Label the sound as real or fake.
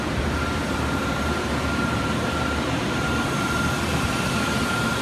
fake